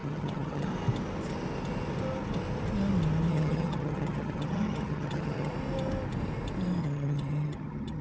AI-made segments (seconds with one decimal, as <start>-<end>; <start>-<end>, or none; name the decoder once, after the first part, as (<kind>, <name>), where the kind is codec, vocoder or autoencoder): 0.0-0.7 (vocoder, HiFi-GAN); 3.3-5.5; 6.8-8.0